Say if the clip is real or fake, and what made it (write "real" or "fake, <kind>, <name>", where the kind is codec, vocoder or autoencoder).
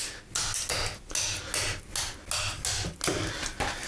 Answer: real